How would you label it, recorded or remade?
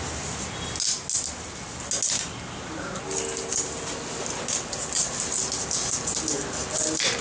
recorded